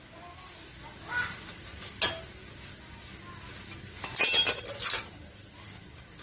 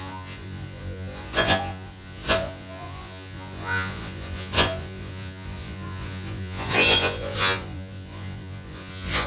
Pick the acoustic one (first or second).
first